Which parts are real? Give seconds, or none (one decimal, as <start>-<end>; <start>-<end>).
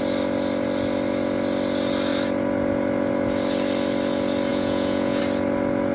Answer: 0.0-4.5; 5.2-5.9